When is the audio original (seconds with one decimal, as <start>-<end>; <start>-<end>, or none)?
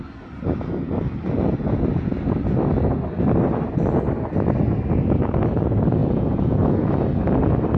0.0-6.0; 6.9-7.8